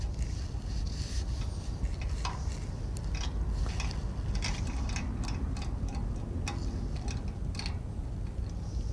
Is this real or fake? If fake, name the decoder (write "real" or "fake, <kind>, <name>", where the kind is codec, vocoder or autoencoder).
real